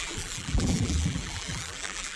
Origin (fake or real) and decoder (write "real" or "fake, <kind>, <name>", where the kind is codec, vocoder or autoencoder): fake, vocoder, BigVGAN v2